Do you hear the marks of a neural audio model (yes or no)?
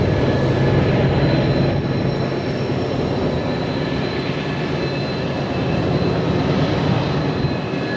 no